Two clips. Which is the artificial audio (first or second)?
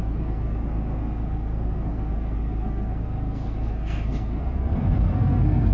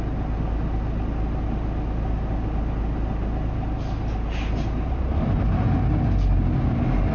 first